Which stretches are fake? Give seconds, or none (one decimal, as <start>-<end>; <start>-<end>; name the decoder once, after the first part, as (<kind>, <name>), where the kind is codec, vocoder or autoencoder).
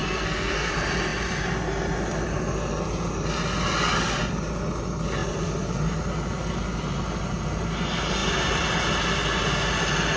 0.0-0.7 (codec, SNAC)